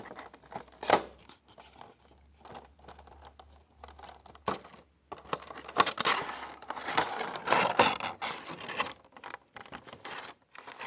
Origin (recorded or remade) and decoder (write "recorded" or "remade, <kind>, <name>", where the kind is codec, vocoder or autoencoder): recorded